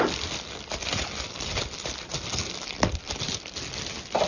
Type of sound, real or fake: real